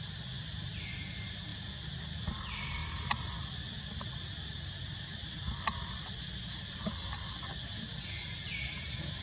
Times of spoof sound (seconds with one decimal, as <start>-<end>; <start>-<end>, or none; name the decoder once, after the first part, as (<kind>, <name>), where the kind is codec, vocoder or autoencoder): none